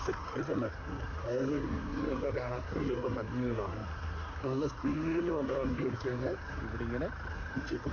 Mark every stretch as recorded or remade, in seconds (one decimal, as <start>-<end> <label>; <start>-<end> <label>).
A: 0.0-6.6 remade; 6.6-7.3 recorded; 7.3-7.9 remade